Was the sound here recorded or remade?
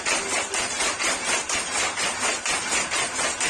recorded